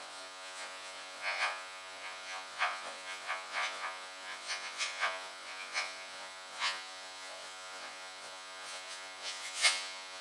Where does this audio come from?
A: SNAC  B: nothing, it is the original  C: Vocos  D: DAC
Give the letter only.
C